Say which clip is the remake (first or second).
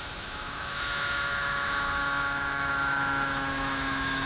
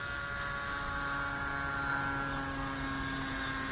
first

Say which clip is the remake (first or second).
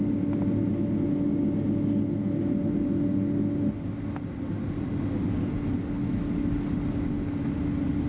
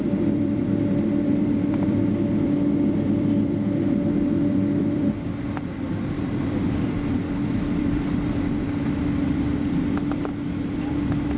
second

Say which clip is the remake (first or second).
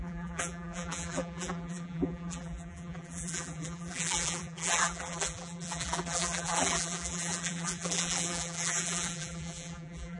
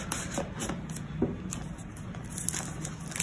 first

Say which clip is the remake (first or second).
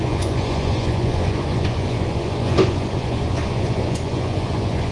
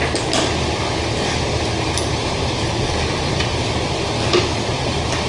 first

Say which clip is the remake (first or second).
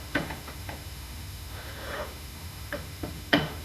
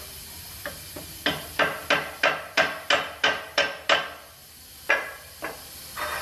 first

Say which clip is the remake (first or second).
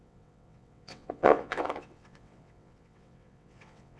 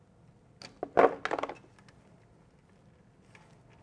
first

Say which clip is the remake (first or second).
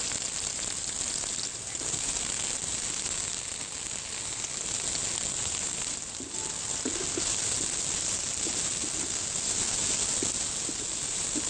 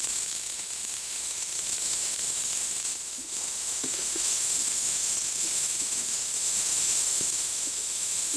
second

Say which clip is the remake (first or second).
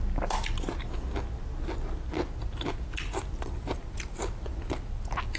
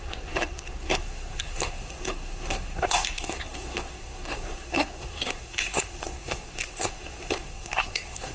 second